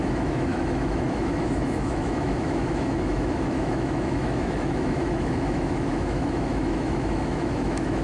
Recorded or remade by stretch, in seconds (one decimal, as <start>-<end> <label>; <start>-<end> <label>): 0.0-8.0 remade